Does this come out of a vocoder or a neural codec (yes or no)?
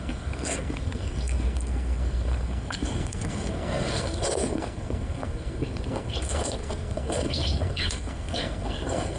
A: yes